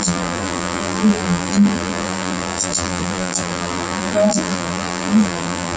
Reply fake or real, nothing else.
fake